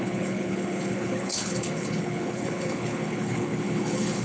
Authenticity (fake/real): fake